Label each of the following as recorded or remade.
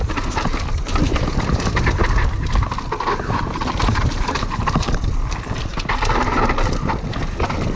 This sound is recorded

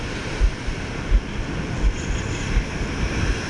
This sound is recorded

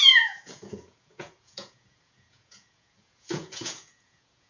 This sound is remade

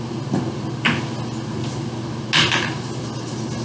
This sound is recorded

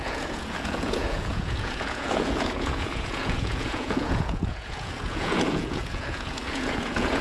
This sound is remade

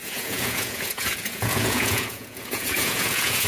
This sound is remade